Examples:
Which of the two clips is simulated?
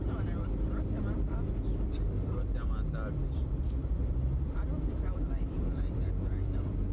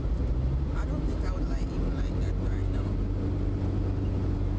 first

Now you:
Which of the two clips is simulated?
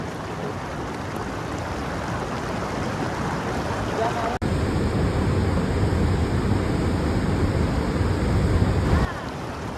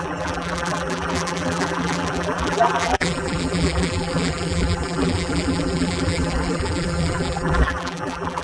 second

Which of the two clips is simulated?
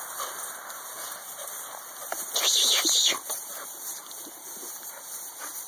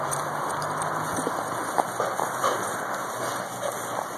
first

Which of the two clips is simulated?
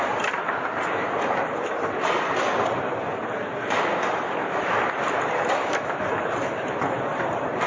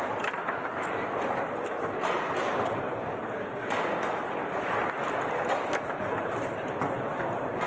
first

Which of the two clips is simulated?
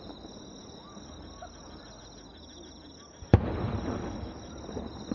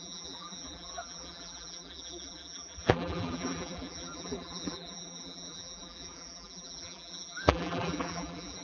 second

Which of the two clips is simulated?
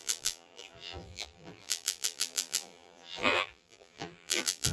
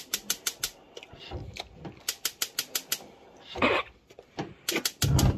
first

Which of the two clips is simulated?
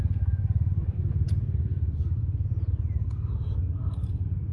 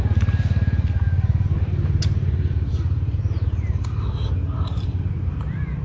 first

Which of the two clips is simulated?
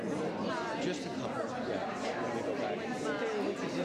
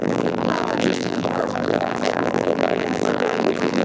second